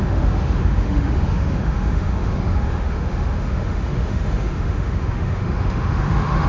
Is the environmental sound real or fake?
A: fake